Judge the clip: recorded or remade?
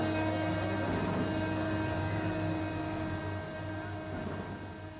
recorded